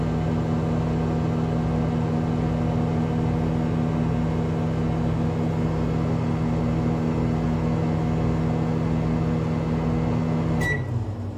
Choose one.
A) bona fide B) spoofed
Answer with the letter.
A